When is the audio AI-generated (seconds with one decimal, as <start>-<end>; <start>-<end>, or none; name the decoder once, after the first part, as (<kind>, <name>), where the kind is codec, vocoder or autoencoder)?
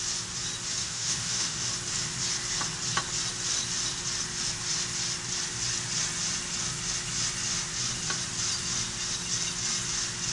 0.8-1.7 (autoencoder, DAC-VAE)